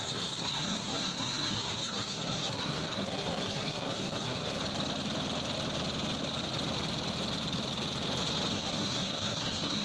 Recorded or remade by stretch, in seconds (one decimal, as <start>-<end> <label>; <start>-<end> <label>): 0.0-4.6 remade; 4.6-8.5 recorded; 8.5-9.8 remade